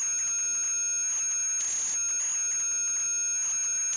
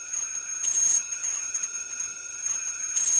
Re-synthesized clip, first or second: second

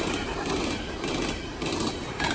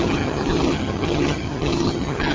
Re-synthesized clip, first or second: second